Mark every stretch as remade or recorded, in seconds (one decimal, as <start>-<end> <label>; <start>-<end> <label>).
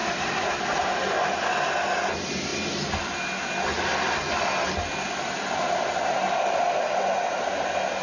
0.0-0.6 remade; 0.6-8.0 recorded